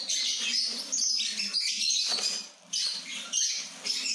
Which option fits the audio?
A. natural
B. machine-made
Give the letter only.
A